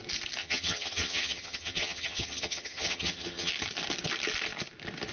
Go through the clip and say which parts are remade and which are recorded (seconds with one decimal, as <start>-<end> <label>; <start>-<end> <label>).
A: 0.0-0.4 recorded; 0.4-3.5 remade; 3.5-5.1 recorded